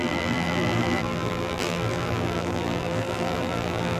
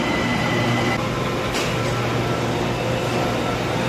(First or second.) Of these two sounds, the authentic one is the second